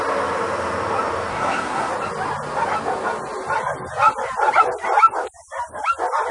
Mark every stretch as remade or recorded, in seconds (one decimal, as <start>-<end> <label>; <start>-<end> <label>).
0.0-1.3 recorded; 1.3-1.9 remade; 1.9-6.3 recorded